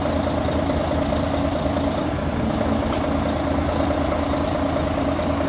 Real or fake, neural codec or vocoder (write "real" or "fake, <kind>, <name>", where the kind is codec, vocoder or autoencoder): real